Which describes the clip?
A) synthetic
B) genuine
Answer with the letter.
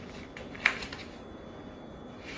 B